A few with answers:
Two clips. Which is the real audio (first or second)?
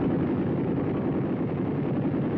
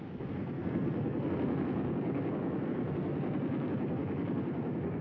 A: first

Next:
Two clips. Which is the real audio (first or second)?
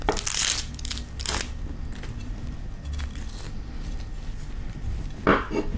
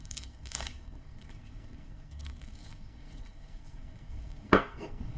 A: first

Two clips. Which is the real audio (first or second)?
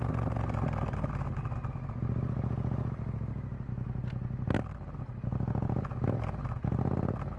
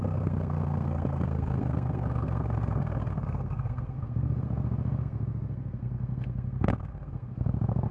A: first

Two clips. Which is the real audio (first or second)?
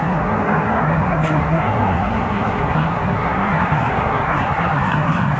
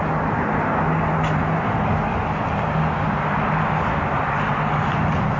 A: second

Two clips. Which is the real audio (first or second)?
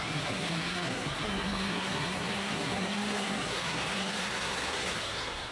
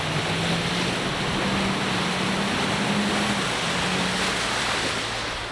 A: second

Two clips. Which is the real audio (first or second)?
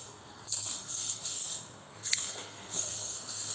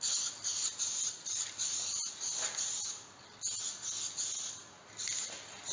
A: second